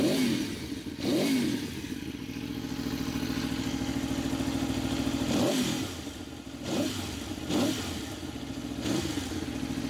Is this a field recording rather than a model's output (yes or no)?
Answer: yes